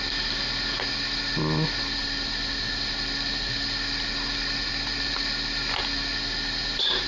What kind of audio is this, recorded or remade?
recorded